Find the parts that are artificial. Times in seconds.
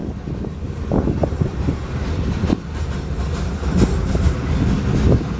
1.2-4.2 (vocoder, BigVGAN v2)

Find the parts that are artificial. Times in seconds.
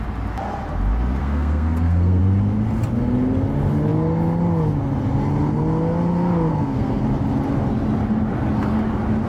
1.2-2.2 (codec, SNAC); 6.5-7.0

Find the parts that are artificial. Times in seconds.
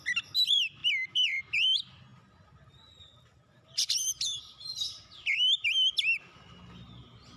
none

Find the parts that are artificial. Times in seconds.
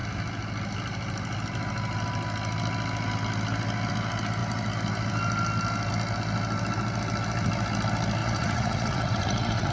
8.2-9.7 (vocoder, Vocos)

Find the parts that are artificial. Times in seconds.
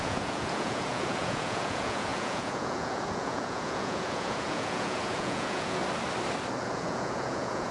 0.0-5.8 (vocoder, Vocos); 6.6-7.7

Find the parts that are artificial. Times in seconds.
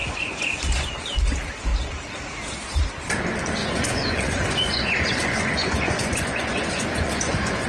0.0-0.9 (vocoder, Vocos); 3.6-7.7